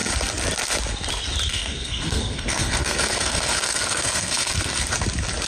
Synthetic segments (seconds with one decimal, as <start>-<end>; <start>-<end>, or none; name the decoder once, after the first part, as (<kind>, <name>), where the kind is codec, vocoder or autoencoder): 1.5-4.8 (codec, SNAC)